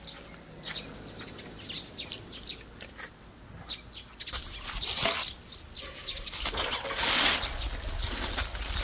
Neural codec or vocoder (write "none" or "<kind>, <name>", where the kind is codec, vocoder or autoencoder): none